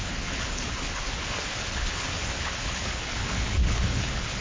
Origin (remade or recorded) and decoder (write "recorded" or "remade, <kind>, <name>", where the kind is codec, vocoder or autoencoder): remade, codec, HILCodec